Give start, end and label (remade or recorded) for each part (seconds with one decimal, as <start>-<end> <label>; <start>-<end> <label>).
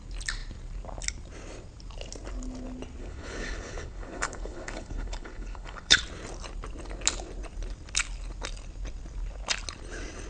0.0-3.0 recorded; 3.0-6.0 remade; 6.0-10.3 recorded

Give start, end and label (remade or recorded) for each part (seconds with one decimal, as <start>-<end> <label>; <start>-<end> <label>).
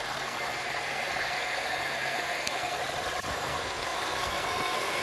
0.0-2.8 remade; 2.8-3.3 recorded; 3.3-5.0 remade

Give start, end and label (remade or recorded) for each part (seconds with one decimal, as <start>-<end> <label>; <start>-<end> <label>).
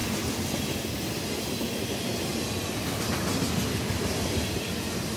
0.0-5.2 recorded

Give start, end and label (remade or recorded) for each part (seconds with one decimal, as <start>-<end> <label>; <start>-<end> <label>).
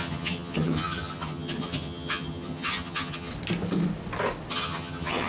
0.0-3.3 remade; 3.3-4.5 recorded; 4.5-5.3 remade